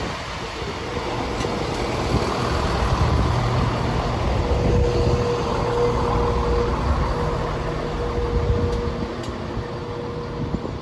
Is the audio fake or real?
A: real